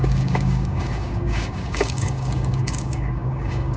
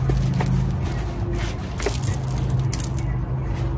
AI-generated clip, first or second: first